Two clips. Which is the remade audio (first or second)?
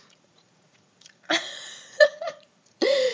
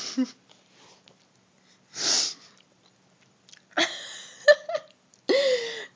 first